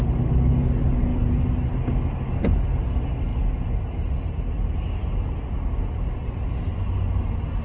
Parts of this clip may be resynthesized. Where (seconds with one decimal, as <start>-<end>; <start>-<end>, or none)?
none